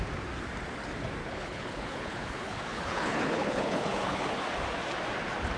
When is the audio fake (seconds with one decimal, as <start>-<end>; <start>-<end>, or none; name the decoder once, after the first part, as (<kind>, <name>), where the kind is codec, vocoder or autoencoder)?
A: 1.2-4.4 (codec, HILCodec)